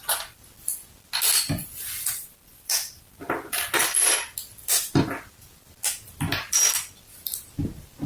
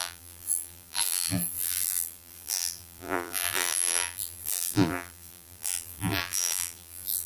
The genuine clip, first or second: first